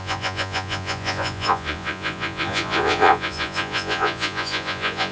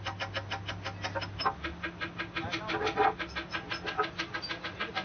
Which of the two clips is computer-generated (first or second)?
first